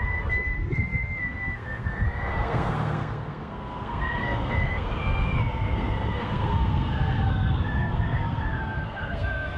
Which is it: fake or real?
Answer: fake